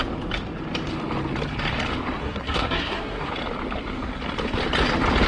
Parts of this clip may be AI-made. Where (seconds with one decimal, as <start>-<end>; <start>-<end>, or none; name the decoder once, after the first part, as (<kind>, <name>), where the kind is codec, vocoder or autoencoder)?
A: 2.2-3.3 (codec, SNAC)